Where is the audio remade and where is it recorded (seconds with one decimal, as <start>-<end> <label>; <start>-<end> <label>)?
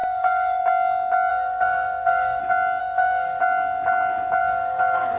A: 0.0-0.6 remade; 0.6-1.3 recorded; 1.3-2.4 remade; 2.4-2.8 recorded; 2.8-3.4 remade; 3.4-4.4 recorded; 4.4-5.2 remade